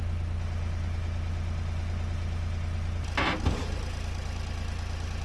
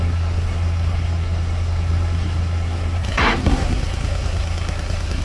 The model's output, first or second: second